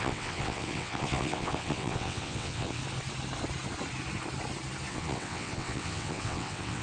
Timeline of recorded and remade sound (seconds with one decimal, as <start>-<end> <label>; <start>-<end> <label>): 0.0-2.8 remade; 2.8-4.9 recorded; 4.9-6.8 remade